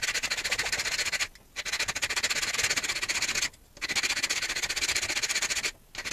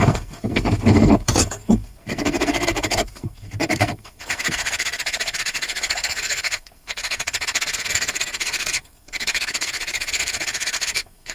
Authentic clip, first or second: first